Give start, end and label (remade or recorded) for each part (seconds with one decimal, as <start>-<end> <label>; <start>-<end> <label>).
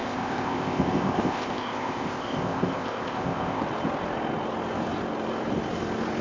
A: 0.0-3.6 remade; 3.6-6.2 recorded